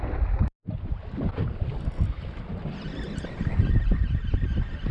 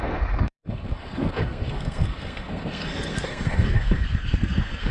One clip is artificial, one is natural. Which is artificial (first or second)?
second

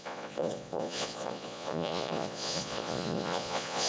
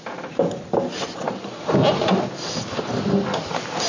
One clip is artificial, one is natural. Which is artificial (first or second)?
first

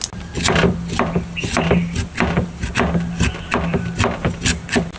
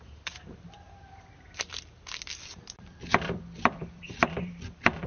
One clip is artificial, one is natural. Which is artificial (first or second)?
second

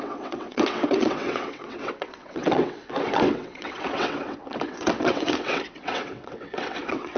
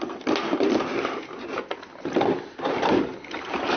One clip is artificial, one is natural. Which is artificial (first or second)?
first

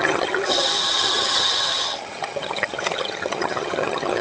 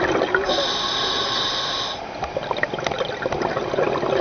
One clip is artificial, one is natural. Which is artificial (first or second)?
first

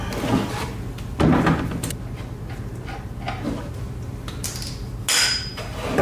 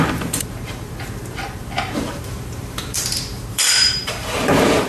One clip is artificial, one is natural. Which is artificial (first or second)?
second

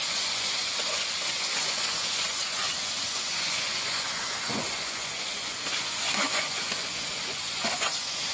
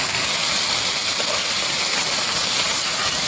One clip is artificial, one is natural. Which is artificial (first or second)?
first